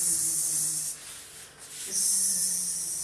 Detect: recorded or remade recorded